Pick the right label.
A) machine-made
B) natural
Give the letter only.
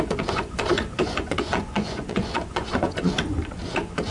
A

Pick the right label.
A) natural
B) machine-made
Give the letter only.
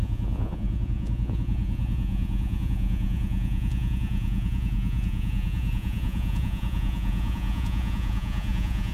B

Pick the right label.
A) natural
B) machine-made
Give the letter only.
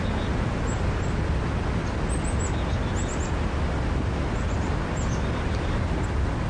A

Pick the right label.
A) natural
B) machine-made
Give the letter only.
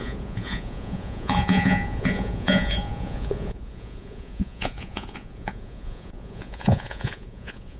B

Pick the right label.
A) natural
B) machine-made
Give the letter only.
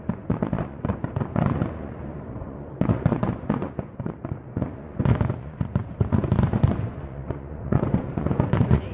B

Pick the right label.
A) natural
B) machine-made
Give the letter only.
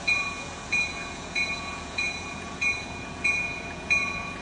B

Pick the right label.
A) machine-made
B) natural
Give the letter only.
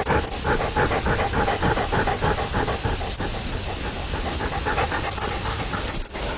B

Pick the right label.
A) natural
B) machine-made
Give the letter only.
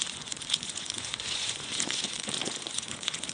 B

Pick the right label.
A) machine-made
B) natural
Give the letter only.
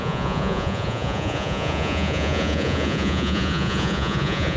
A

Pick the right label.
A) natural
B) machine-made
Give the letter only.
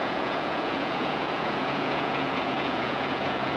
B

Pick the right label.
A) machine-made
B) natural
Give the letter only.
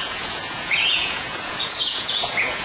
A